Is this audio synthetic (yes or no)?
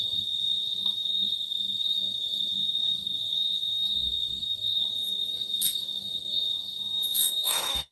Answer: yes